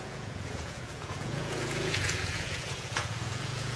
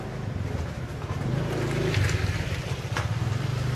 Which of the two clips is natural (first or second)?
second